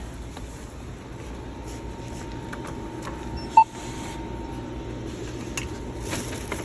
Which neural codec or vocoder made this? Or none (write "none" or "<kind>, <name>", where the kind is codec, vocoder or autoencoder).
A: none